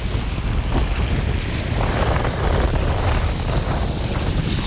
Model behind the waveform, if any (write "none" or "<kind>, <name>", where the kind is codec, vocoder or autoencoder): none